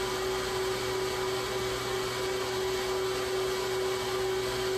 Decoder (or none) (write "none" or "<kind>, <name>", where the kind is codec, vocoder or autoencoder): none